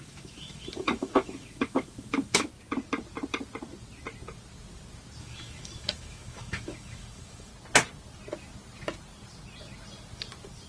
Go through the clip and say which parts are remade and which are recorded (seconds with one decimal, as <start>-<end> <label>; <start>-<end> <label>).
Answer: 0.0-2.5 remade; 2.5-5.2 recorded; 5.2-7.5 remade; 7.5-10.7 recorded